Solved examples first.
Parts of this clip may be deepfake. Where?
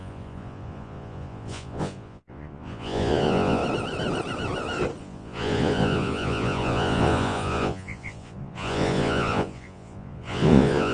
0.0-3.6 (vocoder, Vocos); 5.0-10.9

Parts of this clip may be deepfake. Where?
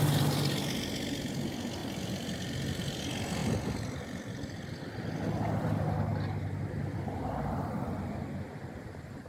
1.8-3.0 (vocoder, BigVGAN v2)